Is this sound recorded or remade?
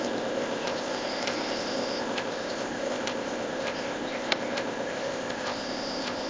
remade